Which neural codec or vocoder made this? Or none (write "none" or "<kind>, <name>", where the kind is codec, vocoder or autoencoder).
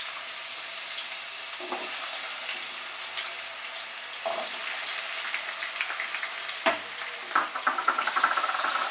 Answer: none